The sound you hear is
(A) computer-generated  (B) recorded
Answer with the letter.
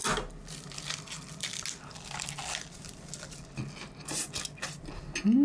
B